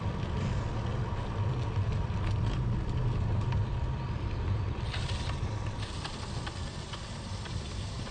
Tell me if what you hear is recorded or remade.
recorded